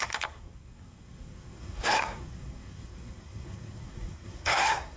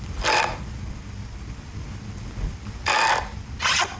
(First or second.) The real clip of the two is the second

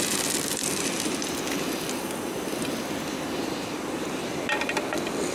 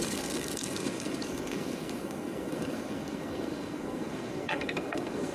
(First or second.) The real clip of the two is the first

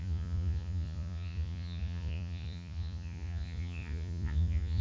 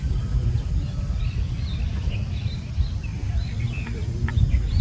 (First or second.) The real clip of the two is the second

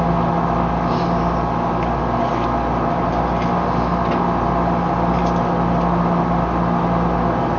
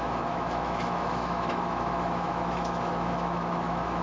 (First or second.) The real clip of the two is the first